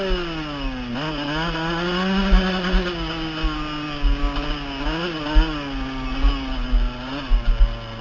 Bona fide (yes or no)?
yes